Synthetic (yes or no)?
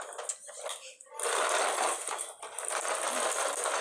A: no